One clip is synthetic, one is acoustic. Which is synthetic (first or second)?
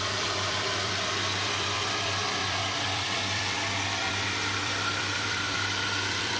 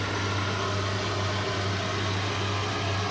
first